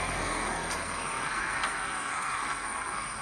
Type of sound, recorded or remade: remade